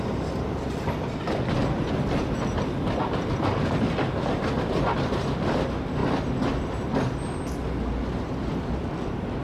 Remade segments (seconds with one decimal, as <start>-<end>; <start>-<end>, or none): none